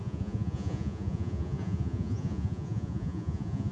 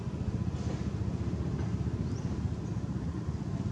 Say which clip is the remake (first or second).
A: first